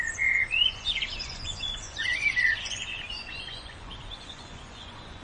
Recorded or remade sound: remade